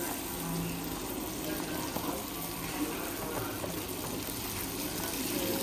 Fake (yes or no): no